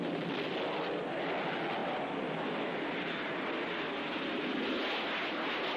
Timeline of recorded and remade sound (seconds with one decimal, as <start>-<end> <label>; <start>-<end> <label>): 0.0-5.8 recorded